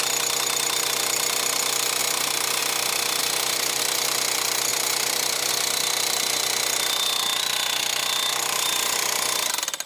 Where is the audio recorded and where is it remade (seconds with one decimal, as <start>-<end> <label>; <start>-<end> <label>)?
0.0-2.0 recorded; 2.0-2.6 remade; 2.6-3.2 recorded; 3.2-3.8 remade; 3.8-4.7 recorded; 4.7-5.5 remade; 5.5-9.9 recorded

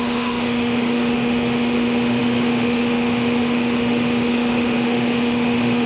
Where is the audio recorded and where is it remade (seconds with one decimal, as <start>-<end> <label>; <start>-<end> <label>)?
0.0-5.9 remade